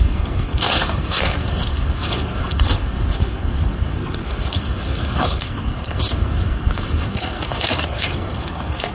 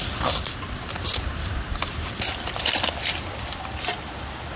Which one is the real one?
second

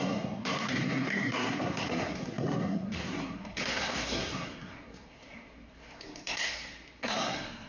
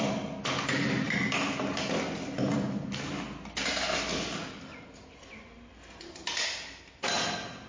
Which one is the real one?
second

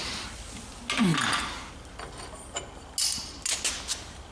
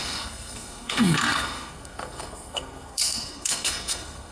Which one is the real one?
first